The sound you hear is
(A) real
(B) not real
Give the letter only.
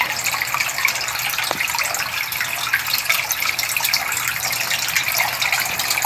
A